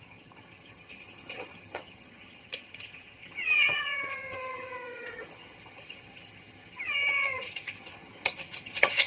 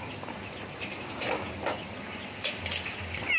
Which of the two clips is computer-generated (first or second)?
first